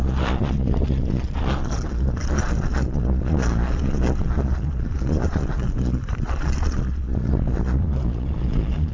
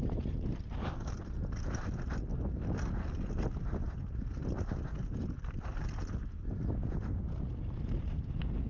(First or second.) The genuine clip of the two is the second